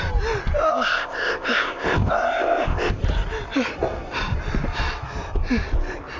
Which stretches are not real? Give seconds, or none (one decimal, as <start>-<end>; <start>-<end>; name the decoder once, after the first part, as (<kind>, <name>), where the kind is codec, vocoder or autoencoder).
0.7-3.0 (codec, ZipCodec)